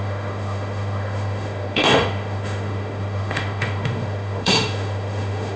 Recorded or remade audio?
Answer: remade